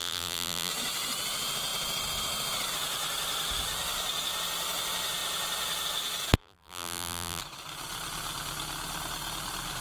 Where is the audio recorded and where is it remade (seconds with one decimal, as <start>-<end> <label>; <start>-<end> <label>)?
0.0-0.7 remade; 0.7-6.4 recorded; 6.4-7.4 remade; 7.4-9.8 recorded